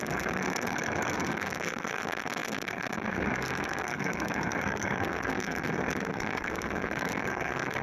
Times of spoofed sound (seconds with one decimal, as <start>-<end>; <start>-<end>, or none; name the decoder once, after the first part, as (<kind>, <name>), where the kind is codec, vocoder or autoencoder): 0.0-7.8 (codec, SNAC)

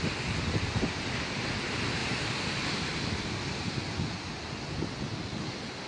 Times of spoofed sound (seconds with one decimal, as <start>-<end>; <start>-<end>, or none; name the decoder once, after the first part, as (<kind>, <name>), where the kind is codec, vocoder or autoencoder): none

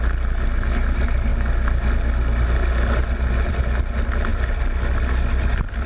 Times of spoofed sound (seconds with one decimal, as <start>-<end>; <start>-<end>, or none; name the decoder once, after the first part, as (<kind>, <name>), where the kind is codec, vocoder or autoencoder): none

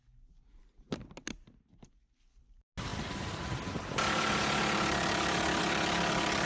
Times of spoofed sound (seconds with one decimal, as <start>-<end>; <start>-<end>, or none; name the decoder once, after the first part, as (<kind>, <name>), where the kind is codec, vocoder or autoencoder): none